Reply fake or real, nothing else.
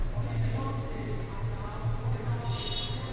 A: real